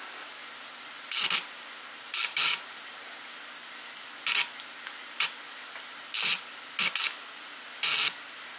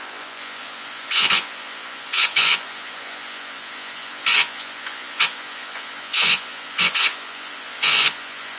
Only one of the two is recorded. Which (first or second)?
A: first